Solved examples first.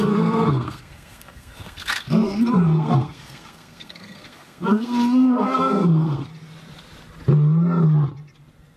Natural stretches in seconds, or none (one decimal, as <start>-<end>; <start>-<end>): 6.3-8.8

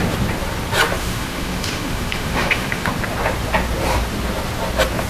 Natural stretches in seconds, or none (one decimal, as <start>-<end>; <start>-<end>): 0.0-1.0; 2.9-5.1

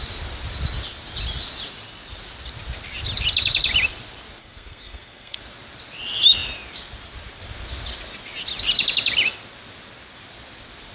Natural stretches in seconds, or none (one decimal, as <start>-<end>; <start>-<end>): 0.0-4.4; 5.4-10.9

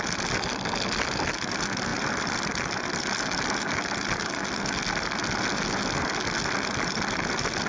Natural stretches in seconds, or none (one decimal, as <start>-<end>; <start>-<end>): 0.0-1.9; 3.0-7.7

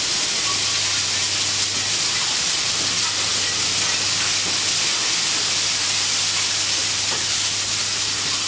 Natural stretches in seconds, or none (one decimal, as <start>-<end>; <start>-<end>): 0.0-8.5

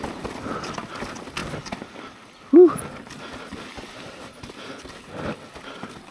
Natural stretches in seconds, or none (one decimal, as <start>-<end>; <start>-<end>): 0.0-3.5; 4.3-6.1

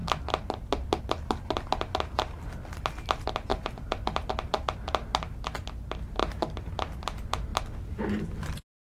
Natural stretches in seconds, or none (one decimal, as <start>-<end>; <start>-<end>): 0.0-3.5; 4.3-6.2; 6.7-8.8

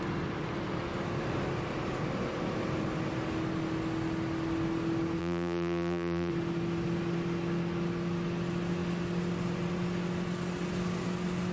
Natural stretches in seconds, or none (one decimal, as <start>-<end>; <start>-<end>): 0.0-5.2; 6.3-11.5